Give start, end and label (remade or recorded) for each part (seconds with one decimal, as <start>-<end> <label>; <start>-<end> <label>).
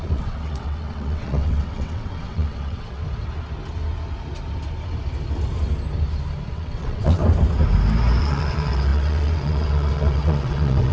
0.0-3.0 remade; 3.0-6.5 recorded; 6.5-7.2 remade; 7.2-8.2 recorded; 8.2-10.9 remade